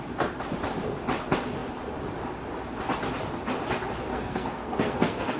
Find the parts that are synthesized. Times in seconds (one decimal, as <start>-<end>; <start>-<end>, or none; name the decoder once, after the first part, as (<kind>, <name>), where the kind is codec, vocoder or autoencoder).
4.1-5.4 (codec, SNAC)